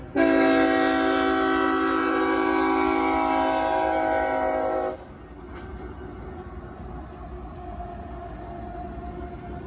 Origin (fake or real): real